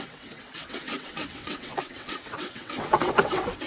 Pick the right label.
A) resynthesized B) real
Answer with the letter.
A